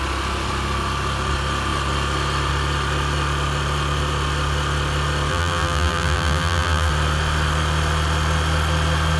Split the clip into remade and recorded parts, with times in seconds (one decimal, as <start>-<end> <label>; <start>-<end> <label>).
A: 0.0-5.3 recorded; 5.3-6.9 remade; 6.9-9.2 recorded